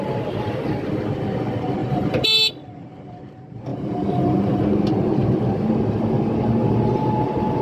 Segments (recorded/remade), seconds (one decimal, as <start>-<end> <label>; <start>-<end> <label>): 0.0-1.8 recorded; 1.8-2.5 remade; 2.5-3.7 recorded; 3.7-4.6 remade; 4.6-7.6 recorded